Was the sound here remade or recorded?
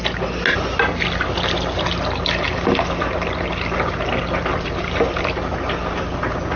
recorded